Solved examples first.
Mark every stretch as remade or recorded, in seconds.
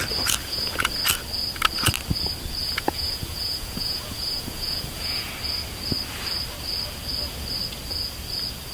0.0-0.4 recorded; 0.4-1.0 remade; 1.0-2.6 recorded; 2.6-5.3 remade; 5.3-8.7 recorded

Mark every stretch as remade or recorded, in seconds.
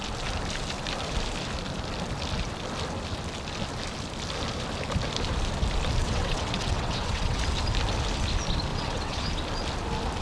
0.0-6.0 recorded; 6.0-7.4 remade; 7.4-8.7 recorded; 8.7-9.3 remade; 9.3-10.2 recorded